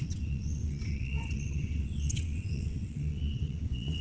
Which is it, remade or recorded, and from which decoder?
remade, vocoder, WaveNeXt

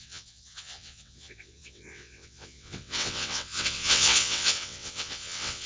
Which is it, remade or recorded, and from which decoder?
remade, vocoder, WaveNeXt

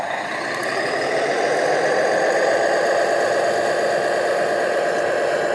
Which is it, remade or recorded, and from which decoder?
recorded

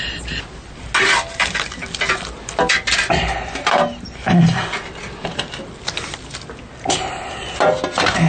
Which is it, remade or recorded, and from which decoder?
recorded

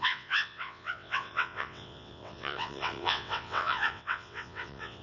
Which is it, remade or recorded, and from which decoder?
remade, vocoder, WaveNeXt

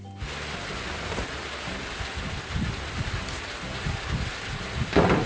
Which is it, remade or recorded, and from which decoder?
recorded